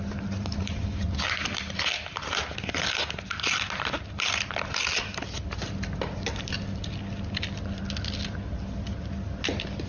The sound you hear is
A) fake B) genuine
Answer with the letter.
B